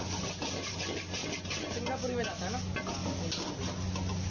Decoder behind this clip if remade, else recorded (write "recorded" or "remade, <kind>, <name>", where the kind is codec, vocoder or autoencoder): recorded